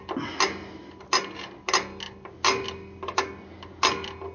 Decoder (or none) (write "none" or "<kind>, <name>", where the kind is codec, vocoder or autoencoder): none